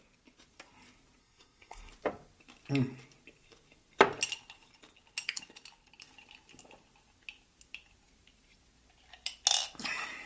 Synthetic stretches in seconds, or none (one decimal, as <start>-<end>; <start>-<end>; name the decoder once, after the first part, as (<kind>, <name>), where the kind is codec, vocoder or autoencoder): 1.2-1.9 (codec, SNAC)